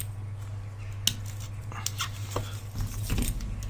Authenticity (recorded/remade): recorded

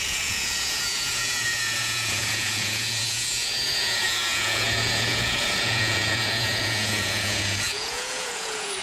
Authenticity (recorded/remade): remade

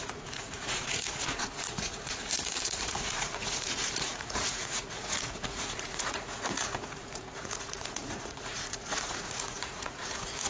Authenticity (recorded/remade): remade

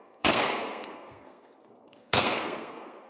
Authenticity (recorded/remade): remade